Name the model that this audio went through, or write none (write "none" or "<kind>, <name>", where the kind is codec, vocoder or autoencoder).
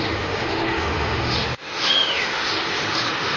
autoencoder, DAC-VAE